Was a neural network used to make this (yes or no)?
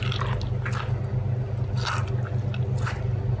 no